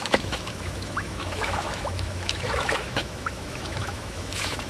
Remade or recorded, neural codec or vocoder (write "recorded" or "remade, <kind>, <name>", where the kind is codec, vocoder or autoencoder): remade, autoencoder, DAC-VAE